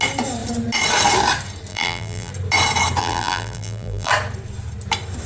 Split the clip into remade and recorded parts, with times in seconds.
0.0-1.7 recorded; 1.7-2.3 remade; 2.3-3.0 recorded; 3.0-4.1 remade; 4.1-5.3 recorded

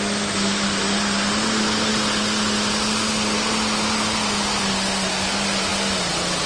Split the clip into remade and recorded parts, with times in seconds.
0.0-6.5 recorded

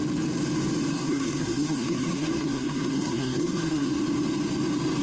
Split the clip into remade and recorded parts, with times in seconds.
0.0-0.9 recorded; 0.9-3.9 remade; 3.9-5.0 recorded